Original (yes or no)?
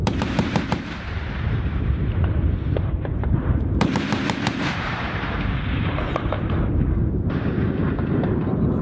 no